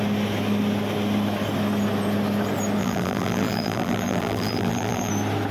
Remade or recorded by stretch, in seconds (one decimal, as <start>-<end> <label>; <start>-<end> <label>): 0.0-2.8 recorded; 2.8-5.1 remade; 5.1-5.5 recorded